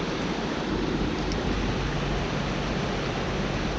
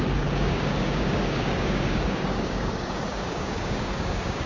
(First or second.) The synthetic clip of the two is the second